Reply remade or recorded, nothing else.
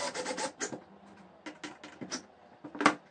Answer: recorded